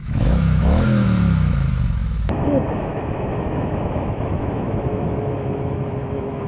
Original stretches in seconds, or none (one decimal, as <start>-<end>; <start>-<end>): none